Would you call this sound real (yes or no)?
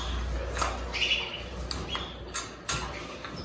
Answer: yes